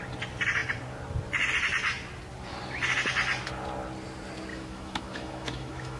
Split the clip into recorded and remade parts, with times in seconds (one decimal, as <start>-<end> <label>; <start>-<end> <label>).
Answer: 0.0-4.5 recorded; 4.5-6.0 remade

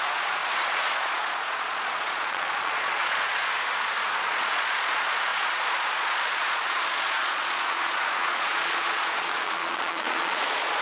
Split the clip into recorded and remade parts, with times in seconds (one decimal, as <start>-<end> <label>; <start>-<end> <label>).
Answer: 0.0-0.4 remade; 0.4-0.9 recorded; 0.9-3.5 remade; 3.5-4.2 recorded; 4.2-10.8 remade

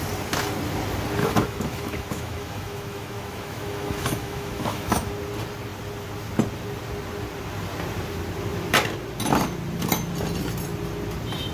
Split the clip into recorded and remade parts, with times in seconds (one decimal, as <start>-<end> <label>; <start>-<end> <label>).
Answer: 0.0-1.2 recorded; 1.2-5.1 remade; 5.1-11.5 recorded

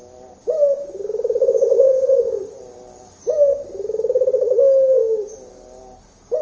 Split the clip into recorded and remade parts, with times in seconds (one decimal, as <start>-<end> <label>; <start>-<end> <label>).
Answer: 0.0-1.4 recorded; 1.4-2.4 remade; 2.4-6.4 recorded

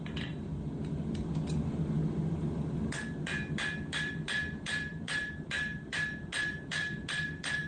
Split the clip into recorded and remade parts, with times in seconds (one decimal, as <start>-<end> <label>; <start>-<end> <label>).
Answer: 0.0-2.0 remade; 2.0-3.5 recorded; 3.5-7.7 remade